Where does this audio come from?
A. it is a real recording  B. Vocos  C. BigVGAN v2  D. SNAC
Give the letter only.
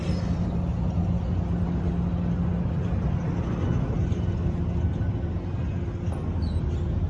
A